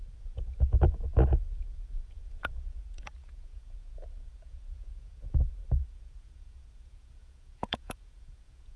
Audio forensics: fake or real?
fake